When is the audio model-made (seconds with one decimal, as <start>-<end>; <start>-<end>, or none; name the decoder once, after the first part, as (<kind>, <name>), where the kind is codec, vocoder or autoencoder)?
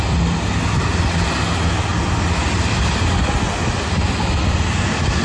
none